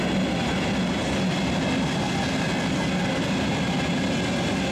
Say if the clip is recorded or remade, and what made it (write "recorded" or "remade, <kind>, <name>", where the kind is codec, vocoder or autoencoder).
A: recorded